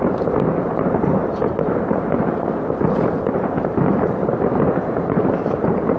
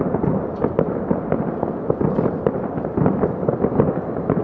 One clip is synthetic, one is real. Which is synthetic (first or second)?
first